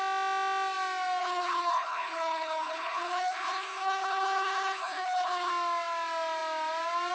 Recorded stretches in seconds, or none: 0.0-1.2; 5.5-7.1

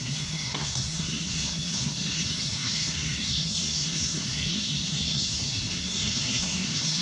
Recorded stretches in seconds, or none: none

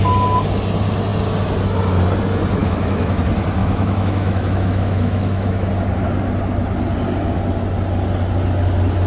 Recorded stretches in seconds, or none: 0.0-2.6; 3.2-3.6; 5.7-9.1

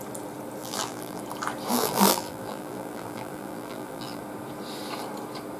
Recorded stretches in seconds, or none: 0.0-0.6; 1.2-1.7; 4.2-5.6

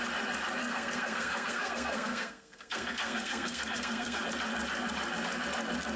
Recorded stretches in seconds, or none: 0.0-0.6; 4.2-6.0

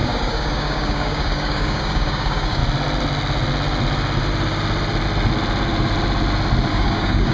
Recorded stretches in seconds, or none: 2.6-6.7

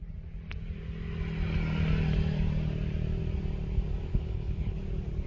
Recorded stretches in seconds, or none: 0.0-4.1; 4.8-5.3